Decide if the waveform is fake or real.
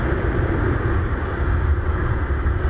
real